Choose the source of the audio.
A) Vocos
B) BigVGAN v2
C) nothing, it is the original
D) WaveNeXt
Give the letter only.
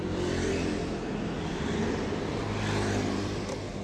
C